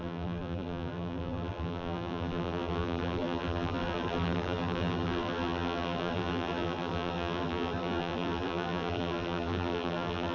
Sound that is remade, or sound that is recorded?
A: remade